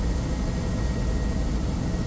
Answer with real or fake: real